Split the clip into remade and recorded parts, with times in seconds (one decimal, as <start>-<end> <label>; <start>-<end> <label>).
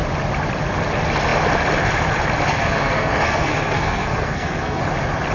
0.0-2.5 recorded; 2.5-4.8 remade; 4.8-5.3 recorded